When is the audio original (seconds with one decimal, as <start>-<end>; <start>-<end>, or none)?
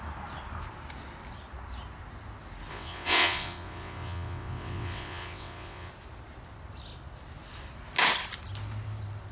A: 0.0-2.7; 5.9-9.3